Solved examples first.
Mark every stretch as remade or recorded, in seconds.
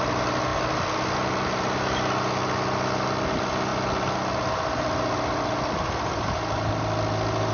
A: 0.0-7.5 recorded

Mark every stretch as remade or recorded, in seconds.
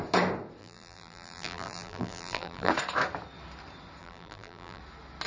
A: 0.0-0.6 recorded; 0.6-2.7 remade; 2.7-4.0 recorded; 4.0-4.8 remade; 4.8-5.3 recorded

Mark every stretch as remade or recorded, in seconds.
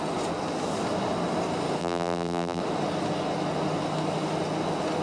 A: 0.0-1.8 recorded; 1.8-2.6 remade; 2.6-5.0 recorded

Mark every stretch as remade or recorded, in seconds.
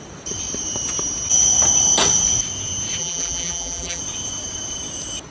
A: 0.0-3.0 recorded; 3.0-4.0 remade; 4.0-5.3 recorded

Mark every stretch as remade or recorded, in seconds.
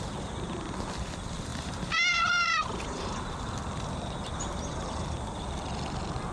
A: 0.0-1.5 recorded; 1.5-3.3 remade; 3.3-6.3 recorded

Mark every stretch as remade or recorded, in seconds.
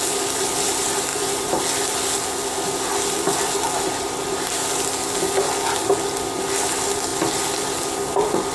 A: 0.0-1.1 recorded; 1.1-1.6 remade; 1.6-8.5 recorded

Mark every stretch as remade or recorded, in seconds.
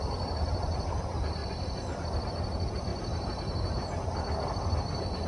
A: 0.0-1.4 remade; 1.4-2.2 recorded; 2.2-5.3 remade